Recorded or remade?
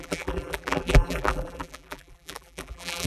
remade